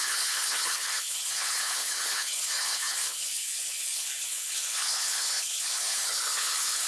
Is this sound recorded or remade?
remade